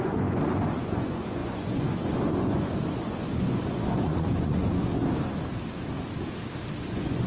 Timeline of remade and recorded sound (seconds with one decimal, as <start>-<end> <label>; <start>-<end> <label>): 0.0-4.9 remade; 4.9-6.8 recorded; 6.8-7.3 remade